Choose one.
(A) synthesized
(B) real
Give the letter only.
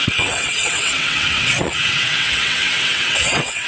A